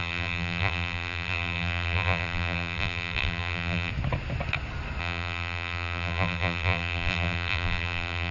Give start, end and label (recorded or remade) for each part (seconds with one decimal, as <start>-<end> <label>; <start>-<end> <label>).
0.0-3.9 remade; 3.9-5.0 recorded; 5.0-8.3 remade